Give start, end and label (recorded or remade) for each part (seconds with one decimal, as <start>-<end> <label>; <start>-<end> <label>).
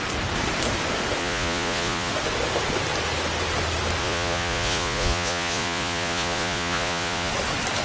0.0-1.2 recorded; 1.2-2.1 remade; 2.1-4.0 recorded; 4.0-7.3 remade; 7.3-7.8 recorded